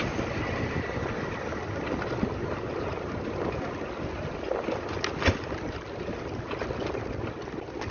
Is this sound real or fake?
real